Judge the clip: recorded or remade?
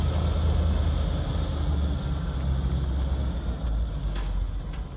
recorded